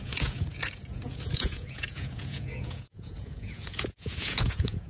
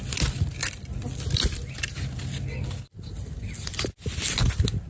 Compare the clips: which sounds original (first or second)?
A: second